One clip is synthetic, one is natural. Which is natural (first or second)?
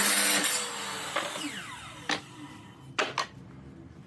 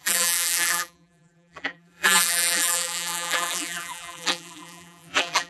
first